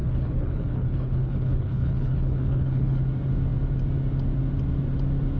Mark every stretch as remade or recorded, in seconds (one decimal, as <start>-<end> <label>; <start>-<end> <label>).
0.0-3.0 remade; 3.0-5.4 recorded